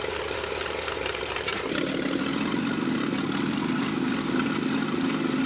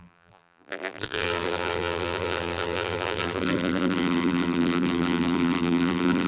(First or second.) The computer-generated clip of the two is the second